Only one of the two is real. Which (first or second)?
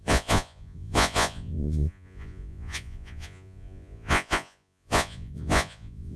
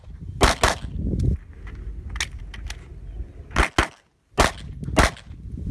second